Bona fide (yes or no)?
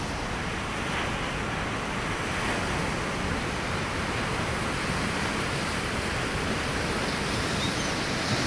yes